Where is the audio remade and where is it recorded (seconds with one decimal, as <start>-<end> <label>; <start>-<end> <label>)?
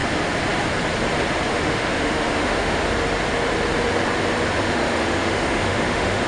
0.0-1.5 recorded; 1.5-2.8 remade; 2.8-4.6 recorded; 4.6-6.3 remade